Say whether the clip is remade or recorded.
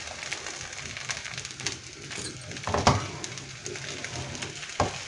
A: recorded